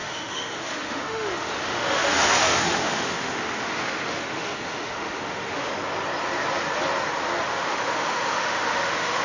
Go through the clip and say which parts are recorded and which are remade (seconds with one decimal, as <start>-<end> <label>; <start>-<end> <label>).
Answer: 0.0-5.7 remade; 5.7-7.4 recorded; 7.4-9.2 remade